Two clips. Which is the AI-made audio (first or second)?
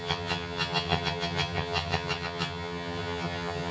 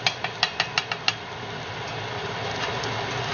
first